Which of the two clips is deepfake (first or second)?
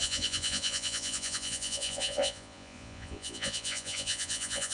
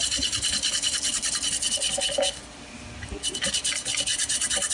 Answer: first